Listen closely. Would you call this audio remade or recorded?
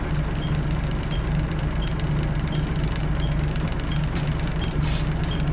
recorded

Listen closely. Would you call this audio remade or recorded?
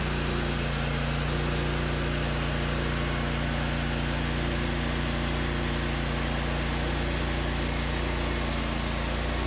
recorded